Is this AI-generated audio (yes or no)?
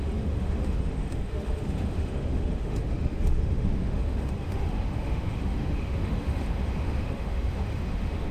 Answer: yes